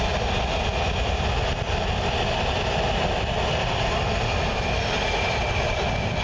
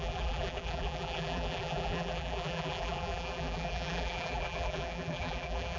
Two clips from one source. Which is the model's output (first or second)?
second